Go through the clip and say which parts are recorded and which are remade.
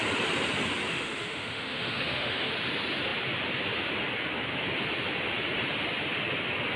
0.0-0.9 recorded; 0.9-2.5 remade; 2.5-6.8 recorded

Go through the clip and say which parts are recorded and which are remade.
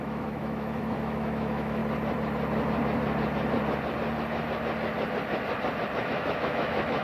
0.0-1.8 remade; 1.8-6.0 recorded; 6.0-7.0 remade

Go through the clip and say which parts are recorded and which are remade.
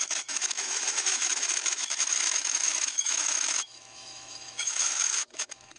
0.0-5.8 remade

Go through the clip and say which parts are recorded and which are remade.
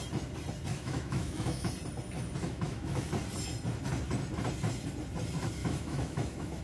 0.0-0.7 recorded; 0.7-1.7 remade; 1.7-2.4 recorded; 2.4-3.1 remade; 3.1-5.6 recorded; 5.6-6.6 remade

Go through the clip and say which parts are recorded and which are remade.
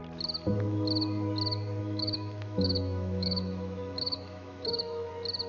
0.0-1.8 recorded; 1.8-5.1 remade; 5.1-5.5 recorded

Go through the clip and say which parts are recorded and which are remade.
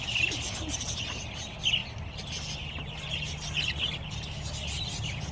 0.0-5.3 recorded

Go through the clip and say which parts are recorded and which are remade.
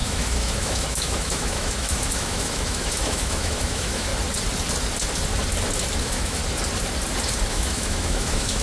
0.0-4.1 remade; 4.1-6.0 recorded; 6.0-6.4 remade; 6.4-7.5 recorded; 7.5-8.6 remade